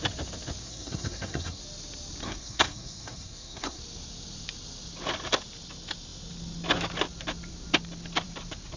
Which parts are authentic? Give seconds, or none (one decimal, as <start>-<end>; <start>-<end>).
0.0-0.6; 1.6-2.2; 3.8-8.8